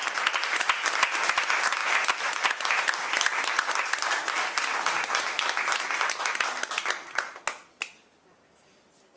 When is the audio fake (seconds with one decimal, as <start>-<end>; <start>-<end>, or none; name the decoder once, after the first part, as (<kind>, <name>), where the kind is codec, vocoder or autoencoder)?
none